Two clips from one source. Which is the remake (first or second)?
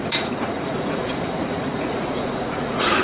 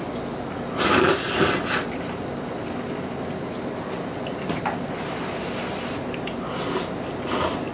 first